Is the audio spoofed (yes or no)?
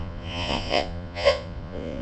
yes